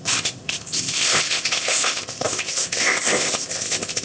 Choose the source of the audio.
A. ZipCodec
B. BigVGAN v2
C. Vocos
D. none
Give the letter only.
A